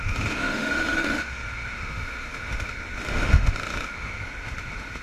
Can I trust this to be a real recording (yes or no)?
no